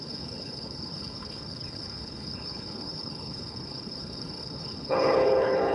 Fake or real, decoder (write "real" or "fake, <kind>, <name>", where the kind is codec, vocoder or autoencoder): fake, codec, HILCodec